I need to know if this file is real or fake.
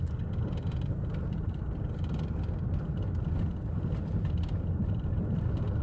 real